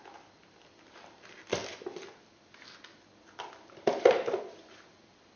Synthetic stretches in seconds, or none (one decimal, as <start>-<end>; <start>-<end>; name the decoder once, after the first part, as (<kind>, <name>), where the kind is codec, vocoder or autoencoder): none